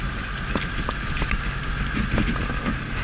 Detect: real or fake real